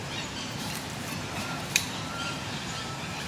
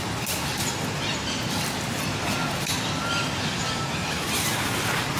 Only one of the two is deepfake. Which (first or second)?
first